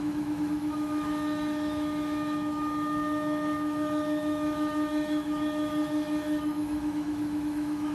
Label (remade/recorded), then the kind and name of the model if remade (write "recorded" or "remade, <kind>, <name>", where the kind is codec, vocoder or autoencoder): remade, autoencoder, DAC-VAE